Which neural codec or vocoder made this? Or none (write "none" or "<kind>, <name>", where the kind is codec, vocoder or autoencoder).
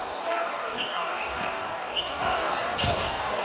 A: codec, DAC